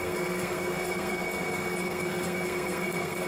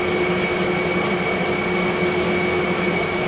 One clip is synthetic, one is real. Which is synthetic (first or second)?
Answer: first